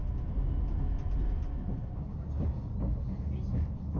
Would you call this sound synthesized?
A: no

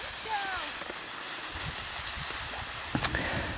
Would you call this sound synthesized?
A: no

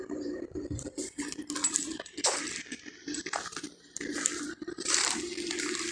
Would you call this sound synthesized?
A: yes